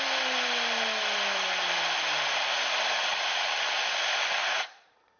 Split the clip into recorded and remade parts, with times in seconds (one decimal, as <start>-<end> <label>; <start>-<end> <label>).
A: 0.0-4.4 recorded; 4.4-5.2 remade